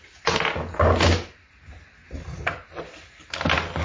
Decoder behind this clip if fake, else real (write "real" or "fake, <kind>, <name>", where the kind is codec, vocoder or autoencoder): real